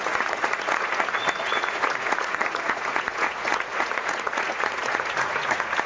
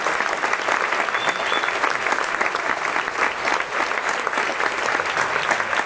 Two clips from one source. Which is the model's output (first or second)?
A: first